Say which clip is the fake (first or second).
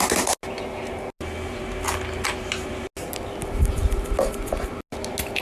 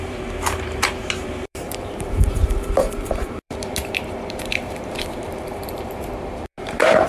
second